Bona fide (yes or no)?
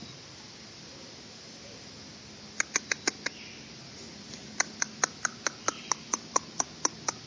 yes